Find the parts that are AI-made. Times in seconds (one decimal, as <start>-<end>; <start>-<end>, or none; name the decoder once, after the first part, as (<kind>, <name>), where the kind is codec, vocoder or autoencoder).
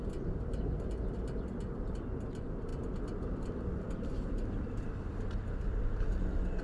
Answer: none